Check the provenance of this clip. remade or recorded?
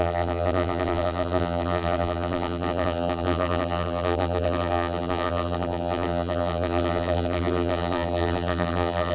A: remade